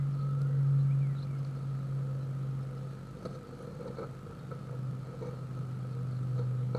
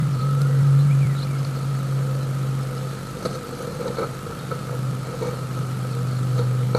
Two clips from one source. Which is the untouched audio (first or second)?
first